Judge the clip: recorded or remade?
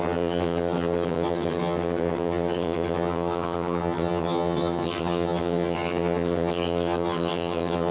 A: remade